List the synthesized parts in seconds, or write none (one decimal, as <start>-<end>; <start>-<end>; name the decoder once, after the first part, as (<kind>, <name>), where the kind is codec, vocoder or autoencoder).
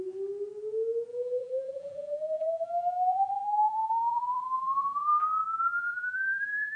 1.1-5.2 (vocoder, BigVGAN v2); 5.8-6.8